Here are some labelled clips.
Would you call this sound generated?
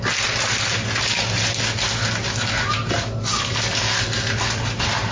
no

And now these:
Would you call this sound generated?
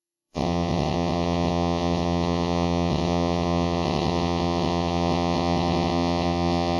yes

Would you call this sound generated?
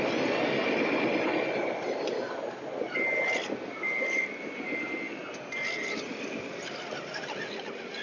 no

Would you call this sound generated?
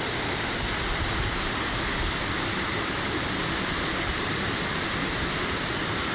no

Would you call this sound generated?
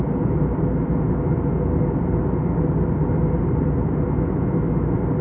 no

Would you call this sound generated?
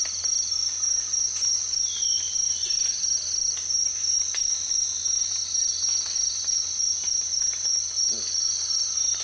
no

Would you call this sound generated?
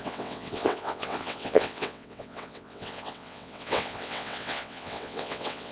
yes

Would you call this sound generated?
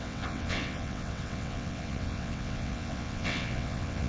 yes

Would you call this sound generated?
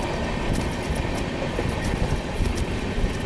no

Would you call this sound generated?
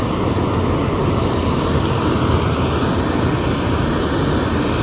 no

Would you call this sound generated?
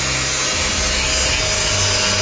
no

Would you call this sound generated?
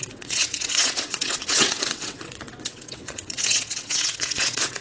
yes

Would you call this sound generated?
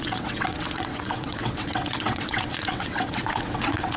yes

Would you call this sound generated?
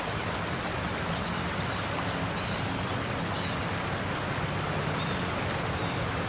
no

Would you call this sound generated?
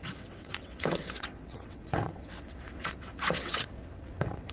yes